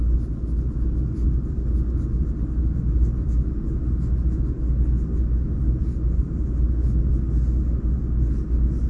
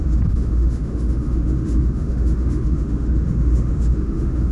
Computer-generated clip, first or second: second